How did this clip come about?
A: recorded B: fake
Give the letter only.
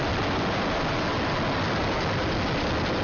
A